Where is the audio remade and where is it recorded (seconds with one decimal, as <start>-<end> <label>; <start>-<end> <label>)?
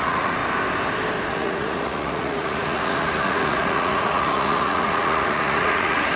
0.0-0.4 remade; 0.4-1.3 recorded; 1.3-6.2 remade